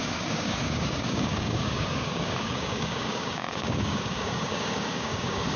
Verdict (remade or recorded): remade